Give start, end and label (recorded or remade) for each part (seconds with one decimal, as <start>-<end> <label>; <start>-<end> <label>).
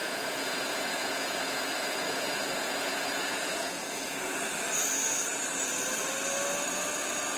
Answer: 0.0-4.4 remade; 4.4-7.4 recorded